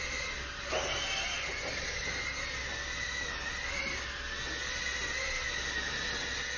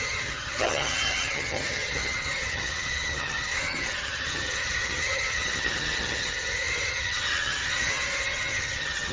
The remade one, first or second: second